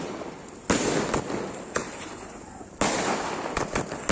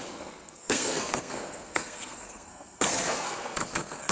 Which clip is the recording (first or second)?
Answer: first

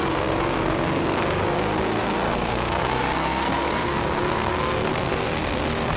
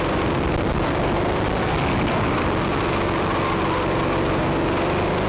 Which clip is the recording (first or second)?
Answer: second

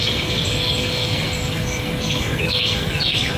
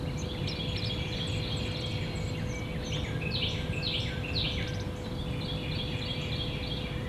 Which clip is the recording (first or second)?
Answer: second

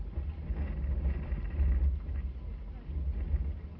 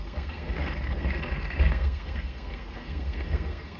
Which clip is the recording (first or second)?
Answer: first